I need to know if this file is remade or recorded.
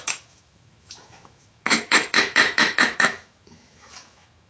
remade